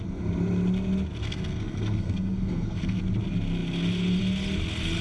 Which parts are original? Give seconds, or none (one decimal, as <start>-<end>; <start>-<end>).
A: 0.0-1.2; 3.0-5.0